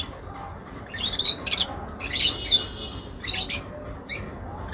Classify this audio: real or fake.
real